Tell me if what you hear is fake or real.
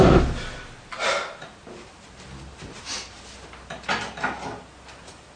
real